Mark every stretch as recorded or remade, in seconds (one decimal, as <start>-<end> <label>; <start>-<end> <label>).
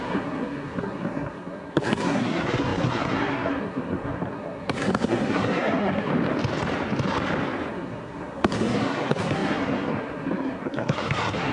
0.0-6.1 remade; 6.1-7.7 recorded; 7.7-11.5 remade